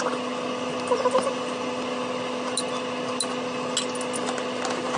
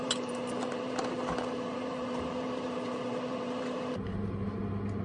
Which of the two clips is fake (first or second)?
second